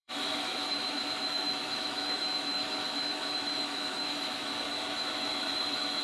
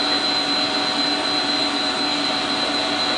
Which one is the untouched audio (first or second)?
second